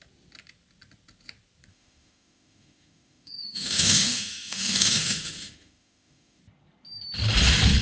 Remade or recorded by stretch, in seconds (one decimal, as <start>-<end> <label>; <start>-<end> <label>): 0.0-1.7 recorded; 1.7-6.4 remade; 6.4-7.8 recorded